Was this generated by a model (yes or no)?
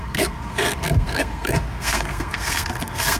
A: yes